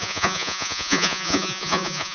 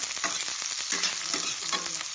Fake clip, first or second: first